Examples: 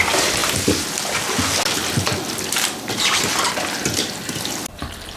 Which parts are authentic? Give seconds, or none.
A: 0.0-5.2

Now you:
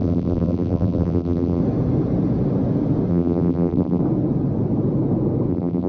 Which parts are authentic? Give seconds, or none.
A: 1.6-3.1; 4.0-5.5

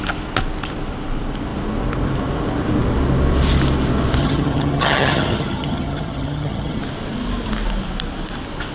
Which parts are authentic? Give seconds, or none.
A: 0.0-4.2; 6.8-8.7

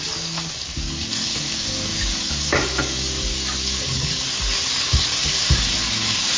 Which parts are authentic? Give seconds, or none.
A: none

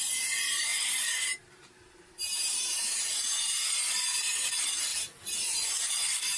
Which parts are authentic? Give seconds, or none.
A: none

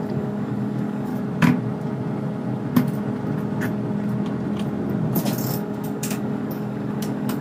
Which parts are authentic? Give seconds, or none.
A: 1.1-5.5

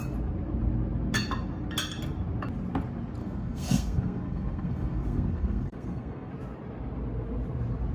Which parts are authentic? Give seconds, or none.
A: 0.0-3.2; 6.3-7.9